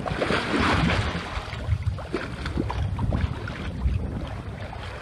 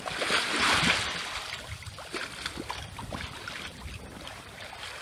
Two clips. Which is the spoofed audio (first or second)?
second